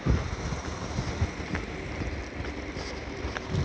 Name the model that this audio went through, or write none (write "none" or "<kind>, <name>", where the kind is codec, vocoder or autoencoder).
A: none